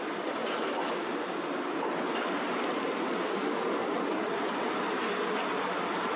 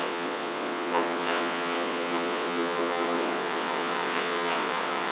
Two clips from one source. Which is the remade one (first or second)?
second